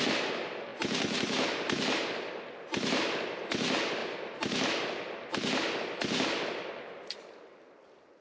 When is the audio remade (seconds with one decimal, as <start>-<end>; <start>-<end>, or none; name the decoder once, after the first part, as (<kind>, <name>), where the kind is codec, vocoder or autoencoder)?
none